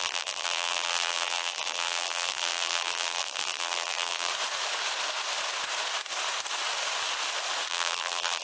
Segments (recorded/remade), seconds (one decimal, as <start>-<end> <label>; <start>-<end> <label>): 0.0-4.3 remade; 4.3-7.7 recorded; 7.7-8.4 remade